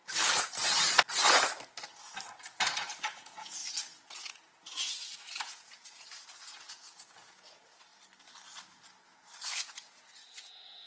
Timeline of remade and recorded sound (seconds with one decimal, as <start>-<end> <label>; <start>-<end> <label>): 0.0-2.4 recorded; 2.4-3.6 remade; 3.6-4.1 recorded; 4.1-7.9 remade; 7.9-10.5 recorded; 10.5-10.9 remade